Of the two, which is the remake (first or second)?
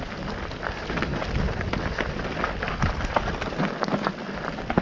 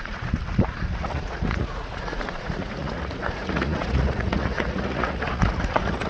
second